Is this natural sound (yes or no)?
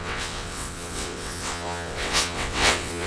no